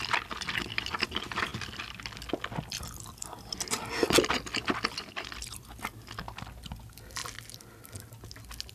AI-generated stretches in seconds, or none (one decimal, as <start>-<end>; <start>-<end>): none